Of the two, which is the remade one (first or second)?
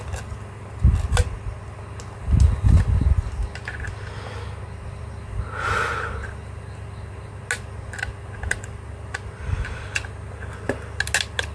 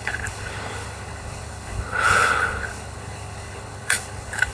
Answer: second